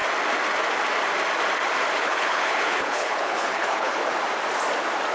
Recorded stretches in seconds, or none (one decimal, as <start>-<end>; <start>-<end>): 0.0-2.0; 4.0-5.1